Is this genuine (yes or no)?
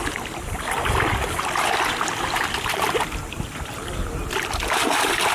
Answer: yes